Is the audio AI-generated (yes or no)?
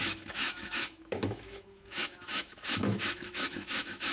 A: yes